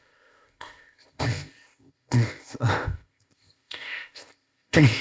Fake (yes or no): yes